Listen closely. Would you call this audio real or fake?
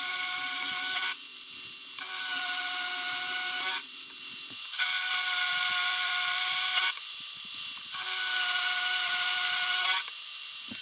fake